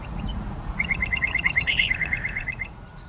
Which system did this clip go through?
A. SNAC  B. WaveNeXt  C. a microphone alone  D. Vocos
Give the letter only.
D